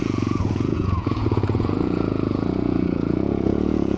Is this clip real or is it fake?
fake